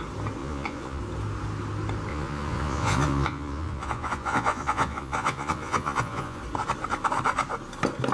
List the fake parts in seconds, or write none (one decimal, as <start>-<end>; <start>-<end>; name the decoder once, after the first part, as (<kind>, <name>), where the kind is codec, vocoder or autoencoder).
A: 0.4-1.0 (vocoder, Vocos); 2.1-6.4